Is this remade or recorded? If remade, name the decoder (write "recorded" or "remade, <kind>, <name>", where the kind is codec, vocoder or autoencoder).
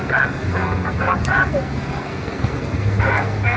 remade, codec, SNAC